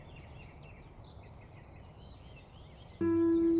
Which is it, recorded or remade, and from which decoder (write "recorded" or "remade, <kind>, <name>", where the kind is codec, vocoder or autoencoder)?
recorded